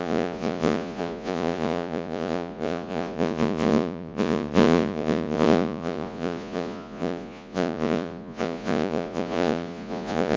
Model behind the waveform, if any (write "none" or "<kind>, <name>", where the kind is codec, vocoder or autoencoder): vocoder, Vocos